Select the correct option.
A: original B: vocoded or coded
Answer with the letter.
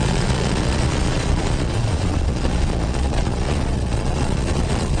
B